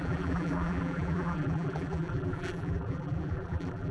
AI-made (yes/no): yes